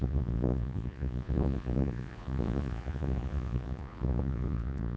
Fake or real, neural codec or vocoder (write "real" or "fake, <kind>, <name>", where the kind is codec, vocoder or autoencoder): fake, vocoder, Vocos